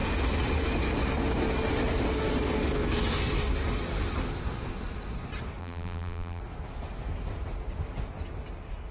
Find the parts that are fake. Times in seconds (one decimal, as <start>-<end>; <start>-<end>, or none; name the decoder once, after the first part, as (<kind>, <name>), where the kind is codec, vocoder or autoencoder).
5.6-6.4 (vocoder, BigVGAN v2)